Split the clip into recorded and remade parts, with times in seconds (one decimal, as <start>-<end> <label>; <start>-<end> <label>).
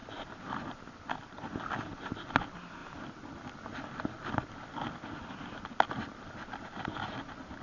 0.0-7.6 recorded